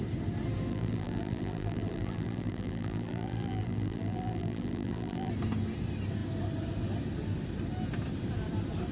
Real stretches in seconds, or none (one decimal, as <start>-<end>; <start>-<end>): 0.0-0.7; 5.3-8.9